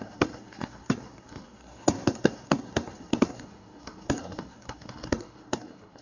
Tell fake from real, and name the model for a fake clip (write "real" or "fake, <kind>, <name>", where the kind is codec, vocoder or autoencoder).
fake, codec, SNAC